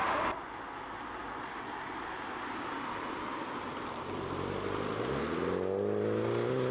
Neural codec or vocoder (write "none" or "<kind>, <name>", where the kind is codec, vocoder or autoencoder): none